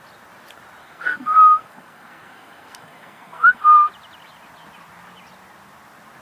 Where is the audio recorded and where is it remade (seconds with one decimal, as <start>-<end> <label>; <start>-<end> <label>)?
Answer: 0.0-0.8 recorded; 0.8-3.9 remade; 3.9-6.2 recorded